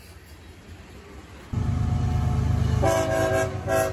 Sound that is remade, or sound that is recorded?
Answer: recorded